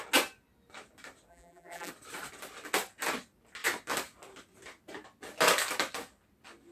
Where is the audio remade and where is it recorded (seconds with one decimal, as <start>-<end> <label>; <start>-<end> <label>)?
0.0-1.3 recorded; 1.3-1.9 remade; 1.9-6.7 recorded